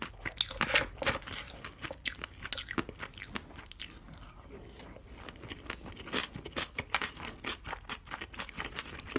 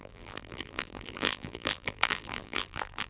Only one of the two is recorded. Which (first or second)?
first